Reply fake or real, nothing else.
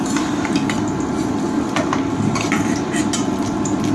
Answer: real